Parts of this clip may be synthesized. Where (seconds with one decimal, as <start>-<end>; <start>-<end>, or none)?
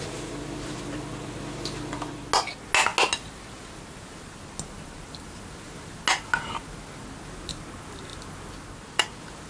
none